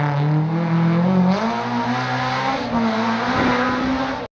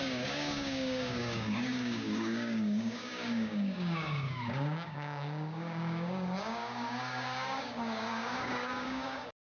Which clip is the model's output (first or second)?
second